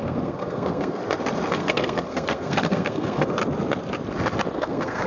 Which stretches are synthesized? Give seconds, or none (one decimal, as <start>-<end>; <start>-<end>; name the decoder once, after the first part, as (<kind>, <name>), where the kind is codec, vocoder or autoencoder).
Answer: 0.0-1.0 (codec, SNAC); 1.5-3.4; 4.6-5.1